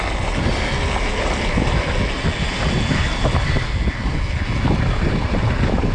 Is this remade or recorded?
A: recorded